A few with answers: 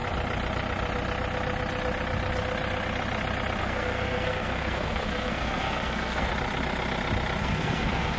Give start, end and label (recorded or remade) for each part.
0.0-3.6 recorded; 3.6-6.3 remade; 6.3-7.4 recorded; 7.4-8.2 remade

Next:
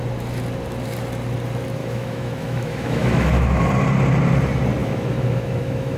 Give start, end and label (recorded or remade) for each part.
0.0-1.8 recorded; 1.8-3.6 remade; 3.6-4.8 recorded; 4.8-6.0 remade

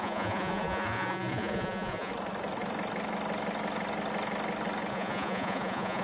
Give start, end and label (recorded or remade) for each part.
0.0-2.1 remade; 2.1-4.9 recorded; 4.9-6.0 remade

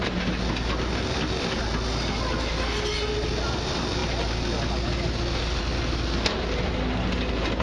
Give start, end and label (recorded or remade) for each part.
0.0-7.6 recorded